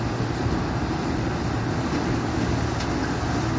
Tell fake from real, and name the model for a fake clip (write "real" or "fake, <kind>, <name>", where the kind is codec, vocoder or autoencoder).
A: real